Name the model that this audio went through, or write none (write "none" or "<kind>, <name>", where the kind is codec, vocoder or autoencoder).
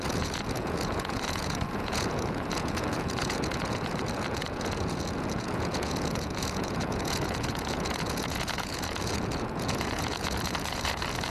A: vocoder, Vocos